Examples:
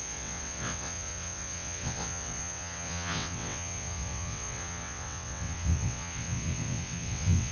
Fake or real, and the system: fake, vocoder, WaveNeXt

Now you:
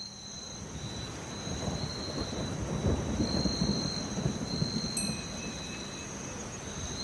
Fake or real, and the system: real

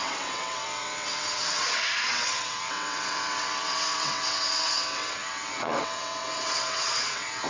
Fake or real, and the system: fake, vocoder, WaveNeXt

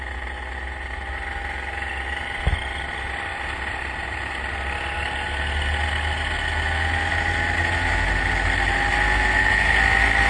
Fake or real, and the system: real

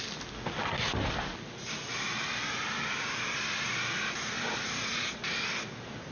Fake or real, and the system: real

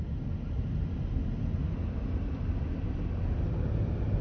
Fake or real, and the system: real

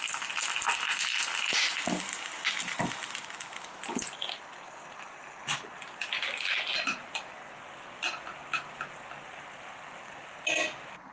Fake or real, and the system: real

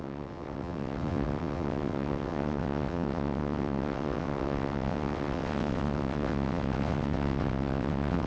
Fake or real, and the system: fake, vocoder, WaveNeXt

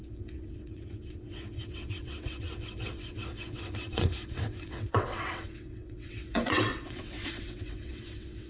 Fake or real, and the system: fake, vocoder, WaveNeXt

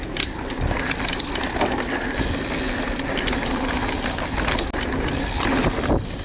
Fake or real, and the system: real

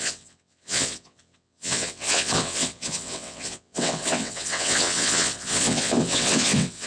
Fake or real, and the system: fake, vocoder, WaveNeXt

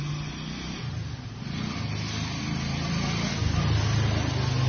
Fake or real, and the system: real